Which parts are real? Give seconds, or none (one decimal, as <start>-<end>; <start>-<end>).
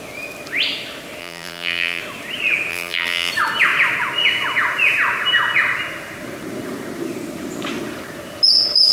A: 0.0-1.2; 2.0-2.7; 3.3-8.9